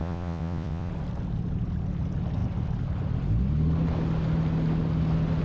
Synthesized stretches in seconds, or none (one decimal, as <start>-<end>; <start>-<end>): 0.0-0.9